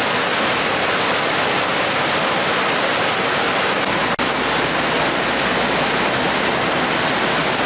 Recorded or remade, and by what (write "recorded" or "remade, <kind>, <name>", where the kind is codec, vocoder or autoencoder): recorded